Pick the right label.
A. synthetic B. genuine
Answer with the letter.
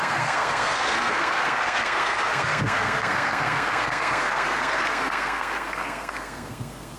A